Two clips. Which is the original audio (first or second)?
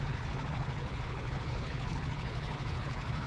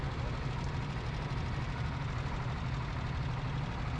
second